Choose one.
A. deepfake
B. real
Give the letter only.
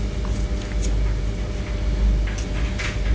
B